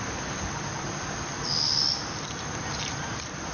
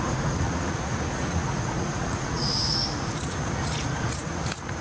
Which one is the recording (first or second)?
first